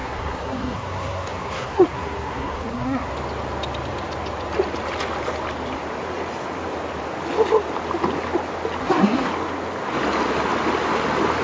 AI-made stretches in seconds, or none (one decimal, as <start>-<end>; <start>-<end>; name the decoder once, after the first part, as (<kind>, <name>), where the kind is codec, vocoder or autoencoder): 0.0-3.1 (codec, SNAC); 8.8-9.3

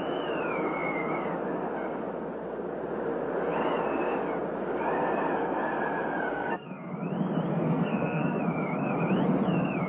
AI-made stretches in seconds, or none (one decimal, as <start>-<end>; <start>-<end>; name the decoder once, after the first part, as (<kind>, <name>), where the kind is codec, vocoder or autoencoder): 6.3-6.9 (codec, SNAC); 7.5-8.4

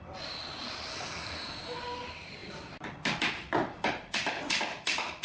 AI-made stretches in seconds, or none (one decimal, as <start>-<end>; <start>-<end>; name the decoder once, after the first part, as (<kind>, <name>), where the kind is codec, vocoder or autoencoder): 0.9-1.8 (codec, SNAC)

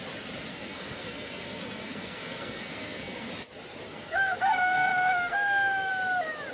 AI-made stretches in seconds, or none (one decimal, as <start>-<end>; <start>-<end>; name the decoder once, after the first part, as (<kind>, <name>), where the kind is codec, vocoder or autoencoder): 0.5-3.3 (codec, SNAC); 3.9-5.9

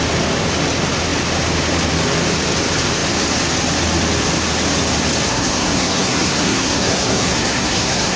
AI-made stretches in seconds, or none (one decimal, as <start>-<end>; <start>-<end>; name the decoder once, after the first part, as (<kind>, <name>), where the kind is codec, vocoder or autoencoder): 5.3-8.2 (codec, SNAC)

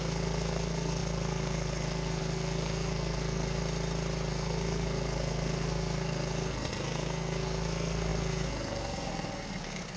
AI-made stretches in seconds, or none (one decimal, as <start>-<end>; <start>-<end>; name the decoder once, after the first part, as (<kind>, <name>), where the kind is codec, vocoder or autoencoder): 0.0-3.6 (codec, SNAC); 4.3-10.0

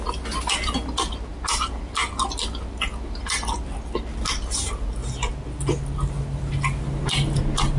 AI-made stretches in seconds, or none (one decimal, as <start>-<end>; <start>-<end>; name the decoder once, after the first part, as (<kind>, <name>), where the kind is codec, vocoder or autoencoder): none

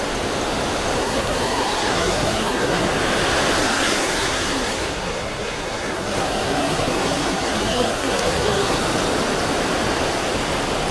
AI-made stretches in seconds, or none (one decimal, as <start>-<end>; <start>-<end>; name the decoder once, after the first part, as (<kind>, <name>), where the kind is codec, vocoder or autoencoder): 1.0-2.9 (codec, SNAC); 3.6-8.8